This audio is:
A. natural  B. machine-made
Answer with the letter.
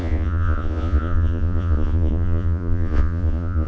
B